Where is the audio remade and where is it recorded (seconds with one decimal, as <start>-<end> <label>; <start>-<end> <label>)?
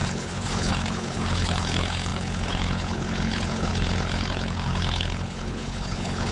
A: 0.0-6.3 remade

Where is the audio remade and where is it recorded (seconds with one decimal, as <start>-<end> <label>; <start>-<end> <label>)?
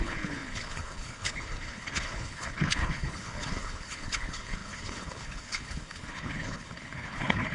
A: 0.0-7.5 remade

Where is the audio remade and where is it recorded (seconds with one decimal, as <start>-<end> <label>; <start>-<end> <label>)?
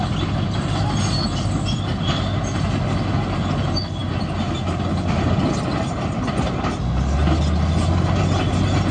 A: 0.0-8.9 recorded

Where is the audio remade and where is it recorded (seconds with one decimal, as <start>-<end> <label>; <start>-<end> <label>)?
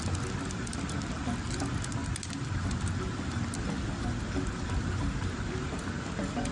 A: 0.0-6.5 recorded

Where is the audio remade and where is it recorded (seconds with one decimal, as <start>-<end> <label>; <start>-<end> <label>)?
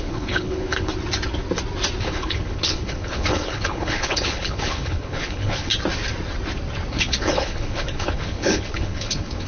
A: 0.0-0.9 remade; 0.9-2.0 recorded; 2.0-5.7 remade; 5.7-6.9 recorded; 6.9-9.5 remade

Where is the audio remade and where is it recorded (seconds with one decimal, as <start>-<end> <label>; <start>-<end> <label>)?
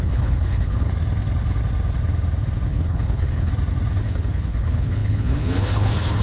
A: 0.0-0.9 remade; 0.9-2.7 recorded; 2.7-3.5 remade; 3.5-4.0 recorded; 4.0-6.2 remade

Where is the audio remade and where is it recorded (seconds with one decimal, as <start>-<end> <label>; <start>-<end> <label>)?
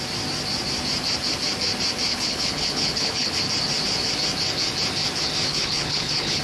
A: 0.0-2.1 recorded; 2.1-3.4 remade; 3.4-5.5 recorded; 5.5-6.4 remade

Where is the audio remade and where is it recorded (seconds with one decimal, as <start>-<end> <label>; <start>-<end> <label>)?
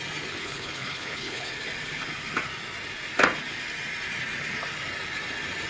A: 0.0-0.4 recorded; 0.4-1.5 remade; 1.5-5.7 recorded